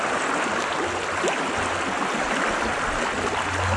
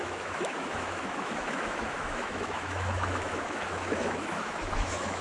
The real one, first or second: first